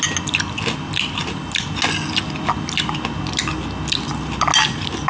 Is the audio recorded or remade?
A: recorded